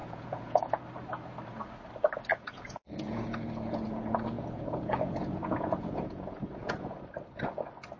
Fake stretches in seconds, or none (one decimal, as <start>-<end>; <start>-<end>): 0.0-0.8; 2.3-7.0